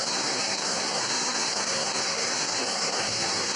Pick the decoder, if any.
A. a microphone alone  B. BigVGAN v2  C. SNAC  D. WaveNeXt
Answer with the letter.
C